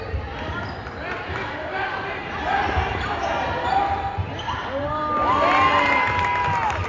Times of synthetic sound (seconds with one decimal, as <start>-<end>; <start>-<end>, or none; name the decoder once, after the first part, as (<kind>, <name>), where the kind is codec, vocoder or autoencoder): 1.0-5.0 (vocoder, BigVGAN v2)